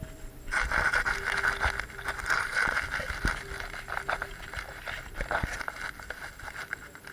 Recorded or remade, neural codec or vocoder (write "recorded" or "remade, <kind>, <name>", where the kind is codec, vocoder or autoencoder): recorded